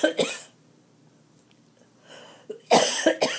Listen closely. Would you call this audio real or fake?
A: real